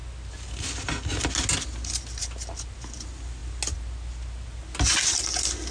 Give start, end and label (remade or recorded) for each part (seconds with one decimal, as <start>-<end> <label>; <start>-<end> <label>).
0.0-5.7 recorded